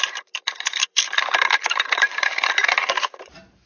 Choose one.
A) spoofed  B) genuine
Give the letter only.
A